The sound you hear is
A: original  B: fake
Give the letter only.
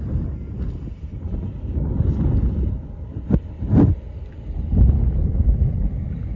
A